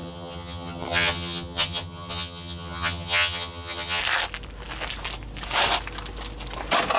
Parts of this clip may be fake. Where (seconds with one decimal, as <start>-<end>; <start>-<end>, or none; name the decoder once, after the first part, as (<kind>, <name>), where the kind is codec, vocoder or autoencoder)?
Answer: 0.0-4.0 (vocoder, HiFi-GAN)